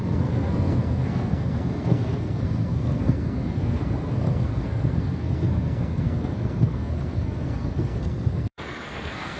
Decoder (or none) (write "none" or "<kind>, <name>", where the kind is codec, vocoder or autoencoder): codec, SNAC